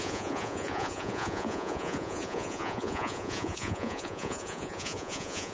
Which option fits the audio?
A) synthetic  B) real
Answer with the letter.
A